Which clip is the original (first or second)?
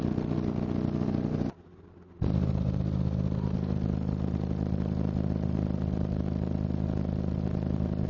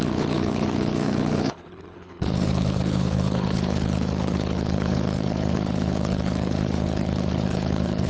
first